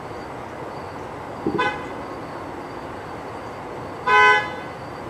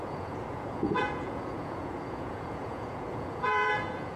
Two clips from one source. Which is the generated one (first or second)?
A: second